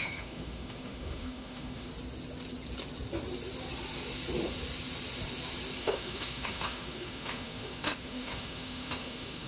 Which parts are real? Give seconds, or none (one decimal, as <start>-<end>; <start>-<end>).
1.9-5.8